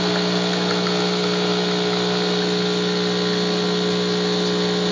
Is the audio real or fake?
real